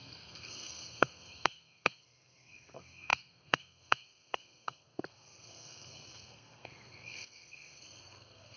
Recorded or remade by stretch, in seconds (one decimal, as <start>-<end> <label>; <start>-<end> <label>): 0.0-8.6 remade